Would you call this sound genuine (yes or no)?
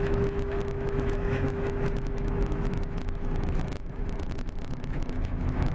no